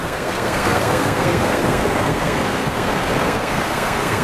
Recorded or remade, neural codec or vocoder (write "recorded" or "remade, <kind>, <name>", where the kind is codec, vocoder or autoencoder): remade, codec, SNAC